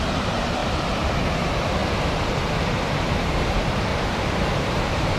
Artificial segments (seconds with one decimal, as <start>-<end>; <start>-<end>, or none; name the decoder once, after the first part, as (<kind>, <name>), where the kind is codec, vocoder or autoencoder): 0.0-1.8 (vocoder, BigVGAN v2); 2.3-3.9; 4.7-5.2